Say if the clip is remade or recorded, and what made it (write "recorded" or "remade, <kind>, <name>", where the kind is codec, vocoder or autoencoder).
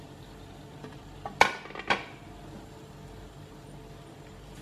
recorded